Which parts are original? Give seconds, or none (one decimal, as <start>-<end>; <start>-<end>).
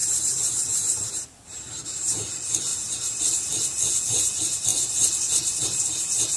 2.3-2.7; 3.2-6.4